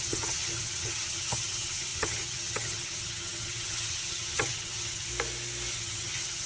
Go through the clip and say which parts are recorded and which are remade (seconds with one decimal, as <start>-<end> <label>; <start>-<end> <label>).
0.0-5.1 remade; 5.1-5.7 recorded; 5.7-6.5 remade